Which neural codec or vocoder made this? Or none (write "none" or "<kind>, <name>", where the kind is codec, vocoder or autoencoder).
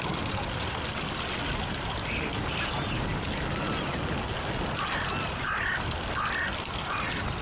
none